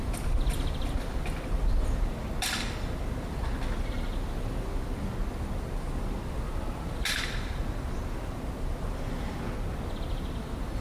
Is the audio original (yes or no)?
yes